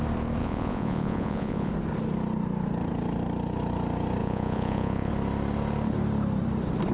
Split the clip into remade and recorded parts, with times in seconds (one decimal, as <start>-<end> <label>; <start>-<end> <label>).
0.0-0.4 recorded; 0.4-1.7 remade; 1.7-4.2 recorded; 4.2-5.1 remade; 5.1-6.9 recorded